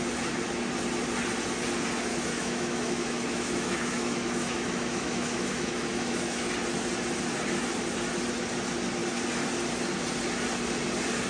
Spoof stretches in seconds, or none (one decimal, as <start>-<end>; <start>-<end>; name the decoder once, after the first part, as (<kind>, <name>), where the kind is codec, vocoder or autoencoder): 2.1-6.5 (autoencoder, DAC-VAE)